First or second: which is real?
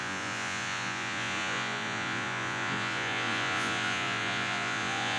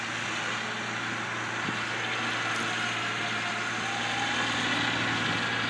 second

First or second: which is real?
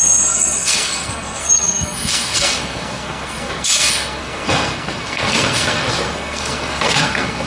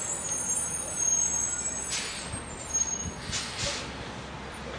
second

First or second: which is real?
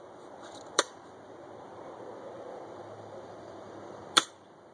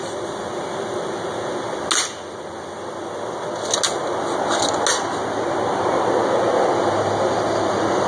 second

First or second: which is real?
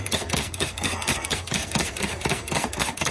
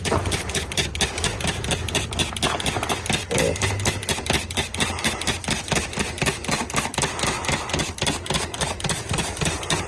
second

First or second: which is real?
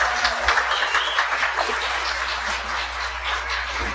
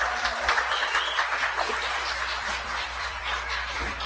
first